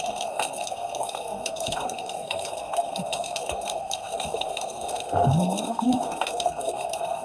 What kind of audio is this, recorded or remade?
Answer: remade